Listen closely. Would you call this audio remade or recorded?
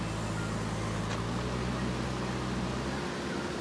recorded